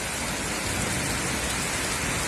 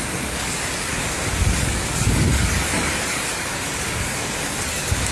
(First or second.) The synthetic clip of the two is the second